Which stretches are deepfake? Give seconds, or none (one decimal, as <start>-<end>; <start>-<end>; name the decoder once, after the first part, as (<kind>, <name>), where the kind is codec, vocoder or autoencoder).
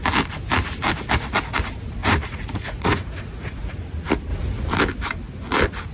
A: 2.0-3.8 (vocoder, Vocos)